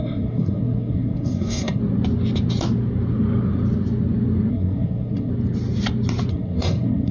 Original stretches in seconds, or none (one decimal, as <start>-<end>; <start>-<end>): 1.8-4.5; 5.3-6.3